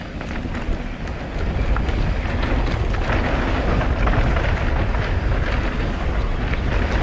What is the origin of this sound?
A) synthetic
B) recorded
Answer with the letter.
B